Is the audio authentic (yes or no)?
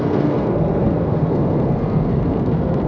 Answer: no